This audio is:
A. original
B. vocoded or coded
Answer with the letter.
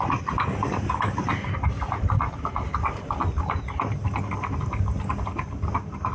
A